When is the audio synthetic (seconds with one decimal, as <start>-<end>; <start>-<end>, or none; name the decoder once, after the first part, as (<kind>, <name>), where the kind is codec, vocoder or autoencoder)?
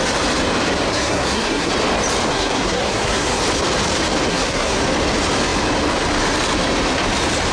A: 0.9-1.7 (codec, SNAC); 2.3-3.4; 4.3-4.8